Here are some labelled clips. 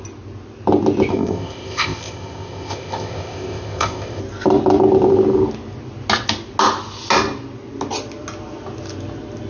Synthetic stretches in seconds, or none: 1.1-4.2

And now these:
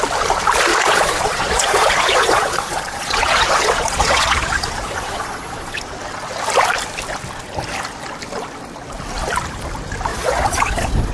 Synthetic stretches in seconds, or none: 0.7-5.8; 10.1-11.1